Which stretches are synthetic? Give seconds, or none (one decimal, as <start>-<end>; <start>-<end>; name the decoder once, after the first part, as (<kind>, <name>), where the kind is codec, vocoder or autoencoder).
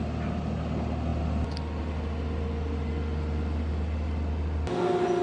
none